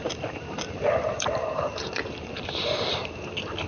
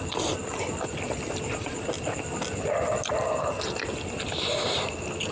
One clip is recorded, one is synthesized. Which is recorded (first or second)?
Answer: second